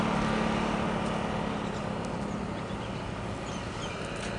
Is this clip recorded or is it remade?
recorded